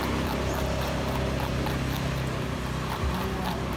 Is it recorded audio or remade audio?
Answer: recorded